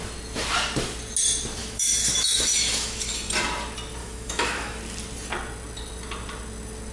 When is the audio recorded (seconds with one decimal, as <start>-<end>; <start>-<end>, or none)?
0.0-1.6; 3.1-4.0; 4.8-6.9

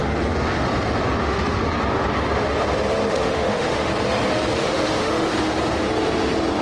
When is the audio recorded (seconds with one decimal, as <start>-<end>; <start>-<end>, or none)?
0.0-1.2; 1.6-3.1; 3.9-4.6; 5.3-6.6